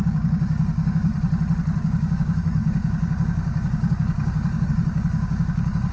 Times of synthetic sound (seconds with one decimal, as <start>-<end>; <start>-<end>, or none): 0.0-1.1; 1.8-5.9